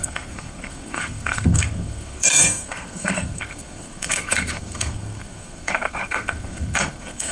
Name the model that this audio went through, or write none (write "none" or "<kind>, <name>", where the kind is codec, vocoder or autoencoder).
codec, SNAC